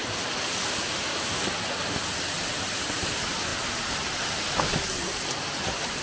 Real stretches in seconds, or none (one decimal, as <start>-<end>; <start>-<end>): 0.0-6.0